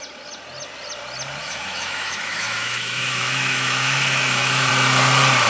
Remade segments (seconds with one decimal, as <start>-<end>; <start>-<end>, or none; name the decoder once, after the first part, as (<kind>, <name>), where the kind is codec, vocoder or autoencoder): 1.4-4.7 (autoencoder, DAC-VAE)